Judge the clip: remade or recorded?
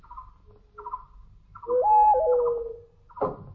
recorded